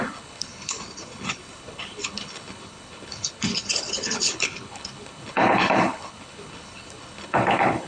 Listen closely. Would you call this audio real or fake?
fake